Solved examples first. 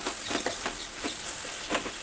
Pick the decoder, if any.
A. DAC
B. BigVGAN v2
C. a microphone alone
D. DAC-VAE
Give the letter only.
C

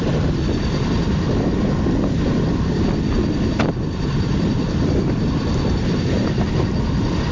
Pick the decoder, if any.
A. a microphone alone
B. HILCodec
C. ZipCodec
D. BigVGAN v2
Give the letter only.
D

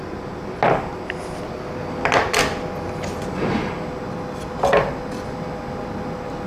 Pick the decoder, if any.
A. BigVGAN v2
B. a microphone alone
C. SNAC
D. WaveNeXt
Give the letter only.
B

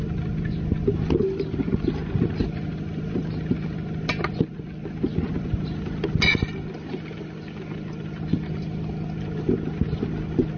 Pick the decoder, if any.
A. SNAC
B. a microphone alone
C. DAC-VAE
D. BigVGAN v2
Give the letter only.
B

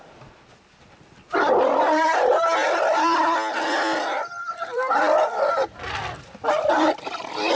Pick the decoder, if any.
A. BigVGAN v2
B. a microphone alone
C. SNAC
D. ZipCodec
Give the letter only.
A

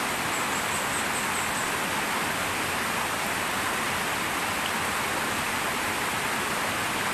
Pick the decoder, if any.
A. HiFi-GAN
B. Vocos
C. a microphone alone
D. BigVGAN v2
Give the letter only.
C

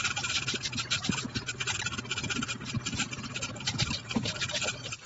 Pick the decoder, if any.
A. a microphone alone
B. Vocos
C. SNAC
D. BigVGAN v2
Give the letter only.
D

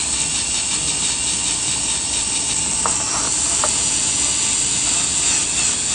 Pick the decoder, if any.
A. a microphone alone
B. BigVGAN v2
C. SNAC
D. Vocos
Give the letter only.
A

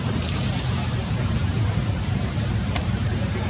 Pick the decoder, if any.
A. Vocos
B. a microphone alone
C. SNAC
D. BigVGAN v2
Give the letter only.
D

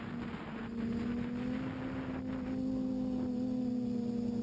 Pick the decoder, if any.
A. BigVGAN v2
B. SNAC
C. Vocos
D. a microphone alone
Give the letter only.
D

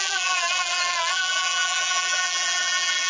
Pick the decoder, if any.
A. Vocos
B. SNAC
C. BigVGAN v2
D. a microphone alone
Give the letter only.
C